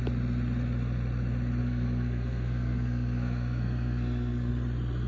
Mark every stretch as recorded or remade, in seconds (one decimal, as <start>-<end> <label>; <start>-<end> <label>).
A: 0.0-1.6 recorded; 1.6-4.5 remade; 4.5-5.1 recorded